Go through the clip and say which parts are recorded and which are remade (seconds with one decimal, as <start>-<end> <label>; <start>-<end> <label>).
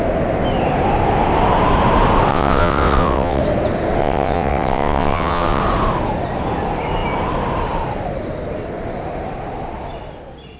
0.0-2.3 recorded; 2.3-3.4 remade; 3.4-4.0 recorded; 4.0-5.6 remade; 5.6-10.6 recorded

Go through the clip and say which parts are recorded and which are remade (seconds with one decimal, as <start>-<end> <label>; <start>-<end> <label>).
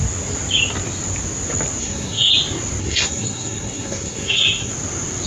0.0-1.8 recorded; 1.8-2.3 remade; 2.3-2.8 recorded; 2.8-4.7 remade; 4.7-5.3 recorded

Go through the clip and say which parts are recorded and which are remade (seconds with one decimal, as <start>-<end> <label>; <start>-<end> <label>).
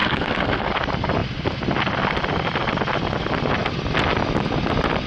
0.0-0.7 remade; 0.7-5.1 recorded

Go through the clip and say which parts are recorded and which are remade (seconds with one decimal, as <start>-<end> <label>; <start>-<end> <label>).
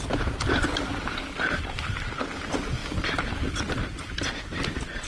0.0-1.0 remade; 1.0-1.6 recorded; 1.6-2.8 remade; 2.8-4.3 recorded; 4.3-5.1 remade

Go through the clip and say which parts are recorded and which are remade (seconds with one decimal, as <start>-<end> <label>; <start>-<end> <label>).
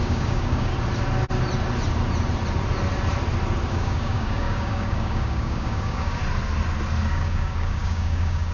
0.0-0.7 remade; 0.7-3.7 recorded; 3.7-6.2 remade; 6.2-7.1 recorded; 7.1-8.5 remade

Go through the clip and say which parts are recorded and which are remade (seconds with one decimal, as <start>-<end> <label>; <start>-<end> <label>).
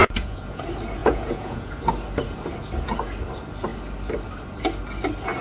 0.0-0.6 remade; 0.6-1.0 recorded; 1.0-1.7 remade; 1.7-5.4 recorded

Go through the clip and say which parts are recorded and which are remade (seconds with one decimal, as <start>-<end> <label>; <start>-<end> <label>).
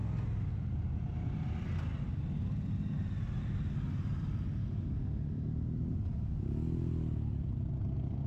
0.0-8.3 recorded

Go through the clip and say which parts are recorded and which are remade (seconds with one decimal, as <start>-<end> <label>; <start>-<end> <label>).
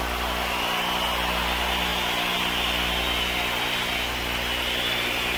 0.0-5.4 recorded